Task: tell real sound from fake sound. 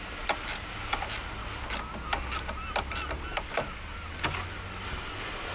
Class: real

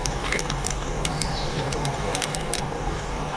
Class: fake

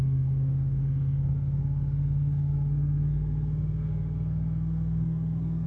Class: fake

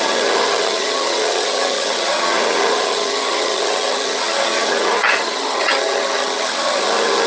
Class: fake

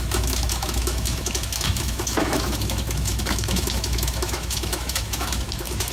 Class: fake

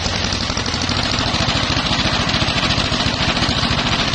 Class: real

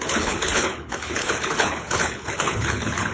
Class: fake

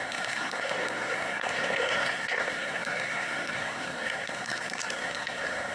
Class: fake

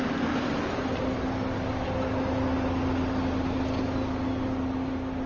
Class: real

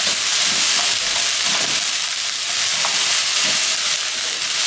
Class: real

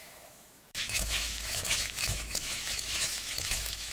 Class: fake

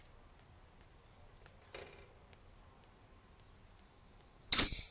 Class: real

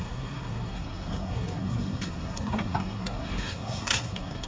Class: fake